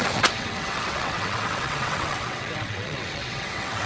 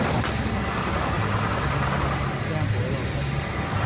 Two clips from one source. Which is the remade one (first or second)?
first